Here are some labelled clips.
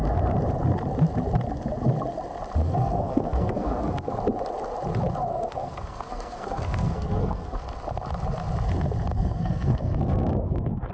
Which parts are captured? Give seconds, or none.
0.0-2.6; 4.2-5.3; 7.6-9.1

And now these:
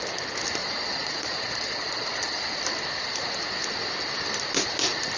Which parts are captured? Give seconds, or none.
0.0-0.6; 2.5-5.2

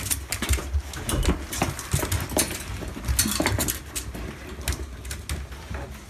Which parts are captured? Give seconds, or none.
0.0-6.1

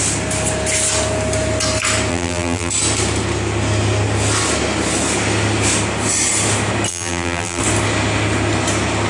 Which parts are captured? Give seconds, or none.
0.0-2.1; 2.7-6.9; 7.6-9.1

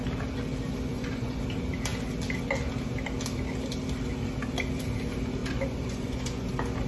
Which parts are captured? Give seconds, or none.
0.0-0.9; 1.4-5.4; 6.5-6.9

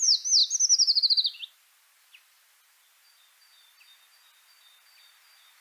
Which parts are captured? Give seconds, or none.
0.0-5.6

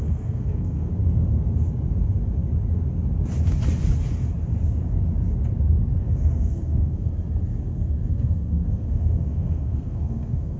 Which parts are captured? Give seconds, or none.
0.9-6.0; 7.1-8.1